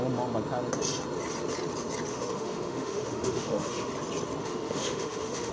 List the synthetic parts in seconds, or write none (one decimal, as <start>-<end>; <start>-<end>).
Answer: 2.1-3.9; 4.4-5.5